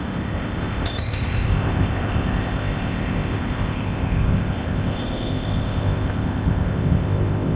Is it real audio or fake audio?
fake